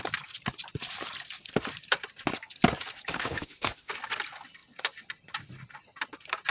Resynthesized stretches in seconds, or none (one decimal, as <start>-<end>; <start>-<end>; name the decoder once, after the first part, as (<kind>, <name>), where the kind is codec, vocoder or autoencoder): 3.1-3.9 (autoencoder, DAC-VAE)